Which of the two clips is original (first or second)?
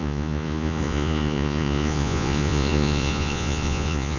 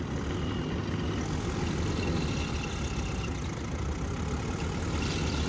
second